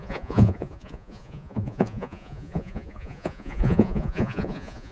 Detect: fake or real fake